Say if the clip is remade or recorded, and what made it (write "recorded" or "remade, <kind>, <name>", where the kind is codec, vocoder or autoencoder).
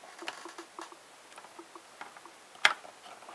recorded